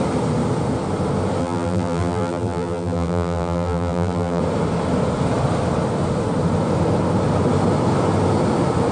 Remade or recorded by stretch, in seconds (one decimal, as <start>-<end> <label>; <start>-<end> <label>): 0.0-1.4 recorded; 1.4-4.4 remade; 4.4-8.9 recorded